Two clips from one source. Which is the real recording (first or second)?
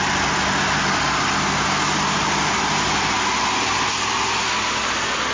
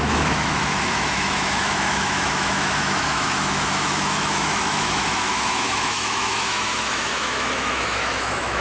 first